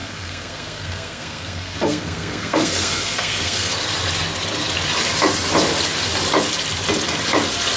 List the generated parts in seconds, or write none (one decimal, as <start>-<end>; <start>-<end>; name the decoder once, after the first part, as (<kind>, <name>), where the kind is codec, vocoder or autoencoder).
0.0-3.7 (codec, SNAC)